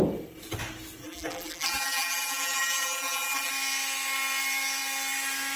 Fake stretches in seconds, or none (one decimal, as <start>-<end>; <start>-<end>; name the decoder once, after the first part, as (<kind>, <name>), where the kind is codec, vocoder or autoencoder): 1.0-3.5 (vocoder, BigVGAN v2)